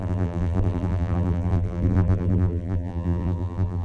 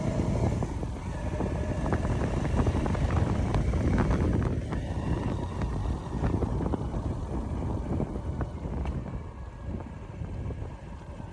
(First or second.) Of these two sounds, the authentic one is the second